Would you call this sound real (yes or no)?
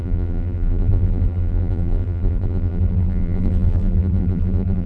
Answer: no